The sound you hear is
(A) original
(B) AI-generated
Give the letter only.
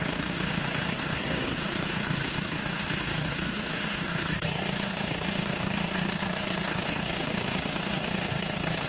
B